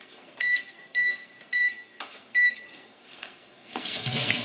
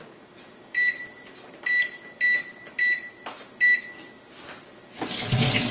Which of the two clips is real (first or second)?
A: second